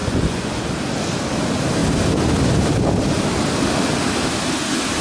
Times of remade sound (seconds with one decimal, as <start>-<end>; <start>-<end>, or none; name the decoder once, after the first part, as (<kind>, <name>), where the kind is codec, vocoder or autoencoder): 0.0-0.6 (vocoder, Vocos)